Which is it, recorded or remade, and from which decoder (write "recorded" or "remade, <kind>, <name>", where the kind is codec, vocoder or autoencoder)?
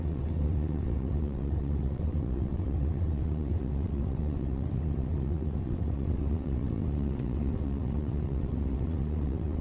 remade, vocoder, WaveNeXt